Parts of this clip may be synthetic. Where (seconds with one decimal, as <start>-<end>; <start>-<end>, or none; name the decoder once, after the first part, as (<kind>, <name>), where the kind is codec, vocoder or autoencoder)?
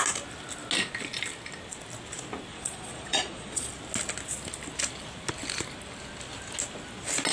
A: 2.5-3.7 (vocoder, Vocos)